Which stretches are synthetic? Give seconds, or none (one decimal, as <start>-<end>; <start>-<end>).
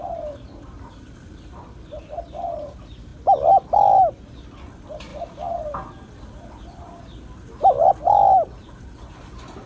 none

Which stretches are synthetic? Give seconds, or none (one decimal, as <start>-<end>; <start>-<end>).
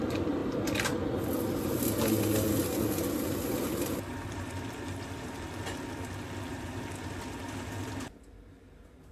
none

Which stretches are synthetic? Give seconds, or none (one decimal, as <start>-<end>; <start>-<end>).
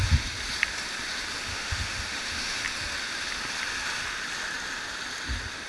1.5-2.6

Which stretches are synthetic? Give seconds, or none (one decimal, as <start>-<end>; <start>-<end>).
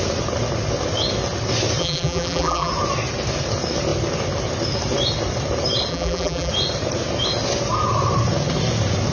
1.8-2.7; 5.9-6.5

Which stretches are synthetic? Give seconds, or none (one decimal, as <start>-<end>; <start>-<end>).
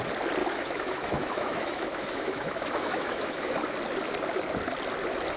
0.4-3.6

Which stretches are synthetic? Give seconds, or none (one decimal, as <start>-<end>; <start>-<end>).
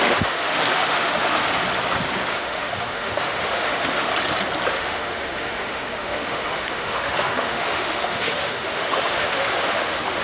0.0-1.4; 2.3-4.1; 4.7-10.2